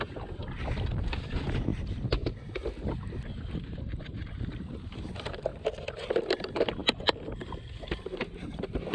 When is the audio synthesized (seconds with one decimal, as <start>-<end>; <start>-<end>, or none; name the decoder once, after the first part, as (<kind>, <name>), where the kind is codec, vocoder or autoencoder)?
0.0-1.7 (vocoder, BigVGAN v2); 4.0-5.5; 6.2-6.8; 7.8-8.9